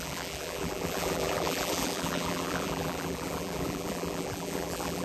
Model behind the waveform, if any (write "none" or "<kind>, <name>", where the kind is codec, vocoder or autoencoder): vocoder, BigVGAN v2